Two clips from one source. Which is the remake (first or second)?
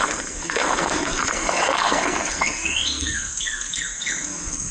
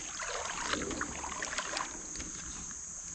first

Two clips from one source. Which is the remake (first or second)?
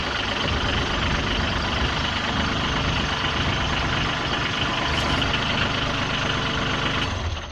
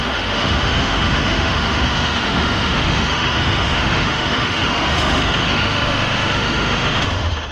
second